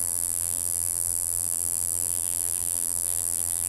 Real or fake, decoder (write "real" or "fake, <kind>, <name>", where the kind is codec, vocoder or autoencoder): fake, vocoder, BigVGAN v2